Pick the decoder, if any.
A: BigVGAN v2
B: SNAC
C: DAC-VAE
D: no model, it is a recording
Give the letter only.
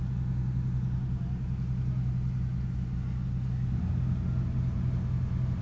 D